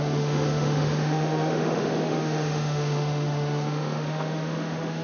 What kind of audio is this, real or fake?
fake